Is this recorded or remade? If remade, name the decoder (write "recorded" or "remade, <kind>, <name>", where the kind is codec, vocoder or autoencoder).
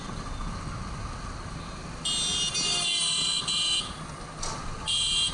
recorded